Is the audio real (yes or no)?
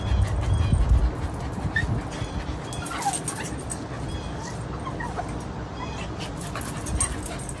yes